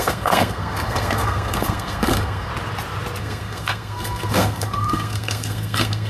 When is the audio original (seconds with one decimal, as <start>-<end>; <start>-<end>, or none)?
2.5-3.2

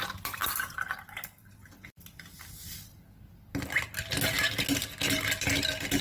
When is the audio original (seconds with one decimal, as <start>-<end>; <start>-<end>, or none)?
0.0-6.0